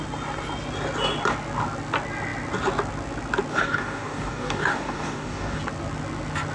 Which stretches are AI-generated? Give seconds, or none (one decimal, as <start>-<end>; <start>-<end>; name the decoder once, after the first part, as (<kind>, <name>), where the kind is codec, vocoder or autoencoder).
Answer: 3.5-5.6 (codec, DAC)